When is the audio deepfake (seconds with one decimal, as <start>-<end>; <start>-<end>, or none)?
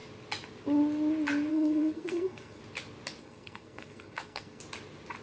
1.5-2.6; 3.2-4.6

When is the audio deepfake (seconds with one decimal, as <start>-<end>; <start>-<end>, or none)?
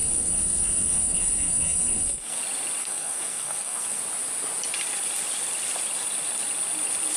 0.0-2.4; 2.8-4.0